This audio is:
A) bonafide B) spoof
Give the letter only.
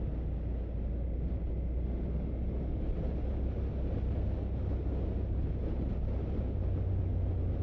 A